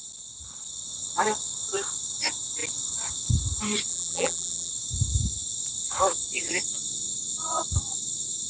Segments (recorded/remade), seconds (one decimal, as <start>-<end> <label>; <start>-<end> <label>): 0.0-3.9 recorded; 3.9-4.7 remade; 4.7-8.5 recorded